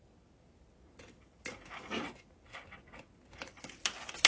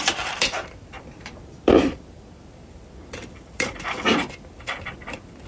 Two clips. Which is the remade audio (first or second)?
second